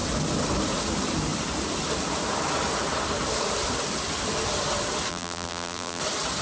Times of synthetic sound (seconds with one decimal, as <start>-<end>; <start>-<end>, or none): 5.1-6.0